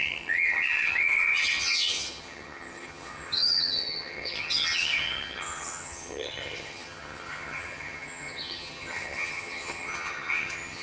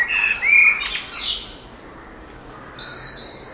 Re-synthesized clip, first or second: first